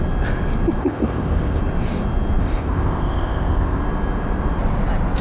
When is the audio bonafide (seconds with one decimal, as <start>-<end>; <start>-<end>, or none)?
0.0-0.8; 1.6-2.4; 3.8-5.2